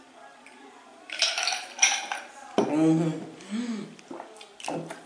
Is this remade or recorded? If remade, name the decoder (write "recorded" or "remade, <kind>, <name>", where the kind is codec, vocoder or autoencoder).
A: recorded